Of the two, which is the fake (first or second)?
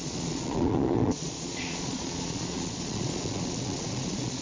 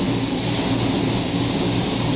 first